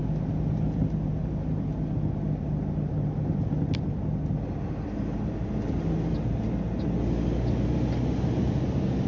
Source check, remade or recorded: recorded